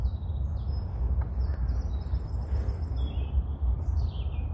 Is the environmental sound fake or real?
real